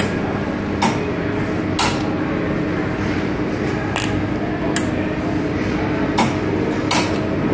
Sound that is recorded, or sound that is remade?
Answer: recorded